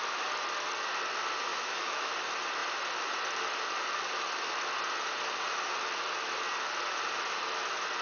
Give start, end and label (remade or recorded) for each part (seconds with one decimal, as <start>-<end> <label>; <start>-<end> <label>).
0.0-1.5 recorded; 1.5-2.1 remade; 2.1-8.0 recorded